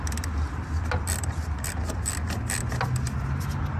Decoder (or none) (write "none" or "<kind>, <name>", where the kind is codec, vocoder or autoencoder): none